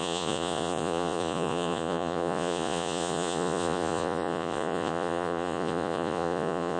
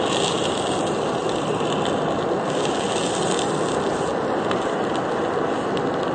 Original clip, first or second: second